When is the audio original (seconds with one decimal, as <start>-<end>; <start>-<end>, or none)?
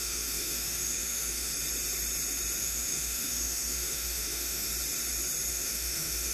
1.5-2.6; 4.7-5.5